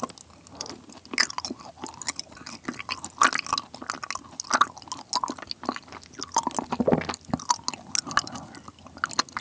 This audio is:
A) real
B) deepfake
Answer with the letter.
A